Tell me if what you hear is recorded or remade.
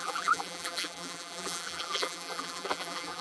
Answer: remade